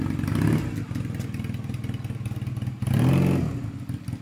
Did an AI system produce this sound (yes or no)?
no